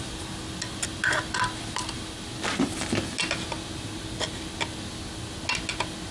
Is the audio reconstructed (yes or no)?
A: no